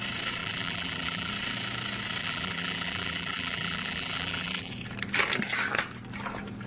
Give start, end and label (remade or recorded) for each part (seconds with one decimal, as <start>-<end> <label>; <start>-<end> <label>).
0.0-0.4 recorded; 0.4-1.3 remade; 1.3-2.2 recorded; 2.2-4.7 remade; 4.7-6.7 recorded

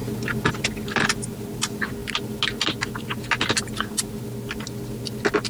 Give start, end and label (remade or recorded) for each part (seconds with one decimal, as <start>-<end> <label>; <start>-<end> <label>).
0.0-5.5 recorded

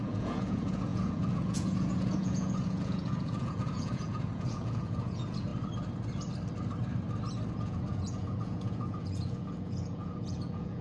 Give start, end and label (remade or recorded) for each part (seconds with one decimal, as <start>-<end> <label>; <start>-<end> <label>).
0.0-5.5 remade; 5.5-7.5 recorded; 7.5-10.8 remade

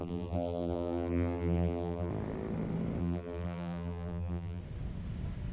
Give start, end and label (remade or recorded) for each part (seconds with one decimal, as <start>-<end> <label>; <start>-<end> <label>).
0.0-2.1 remade; 2.1-3.0 recorded; 3.0-4.6 remade; 4.6-5.5 recorded